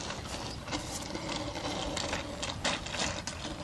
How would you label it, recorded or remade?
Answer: recorded